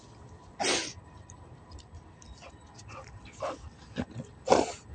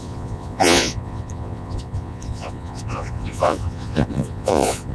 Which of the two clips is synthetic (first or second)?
second